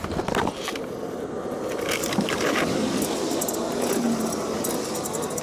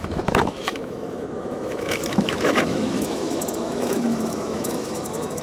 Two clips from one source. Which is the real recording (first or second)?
first